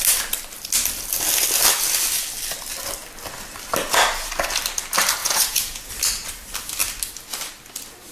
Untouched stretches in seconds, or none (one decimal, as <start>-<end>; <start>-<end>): 0.0-5.2; 5.9-8.1